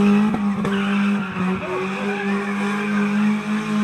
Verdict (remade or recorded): recorded